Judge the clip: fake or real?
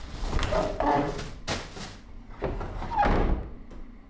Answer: real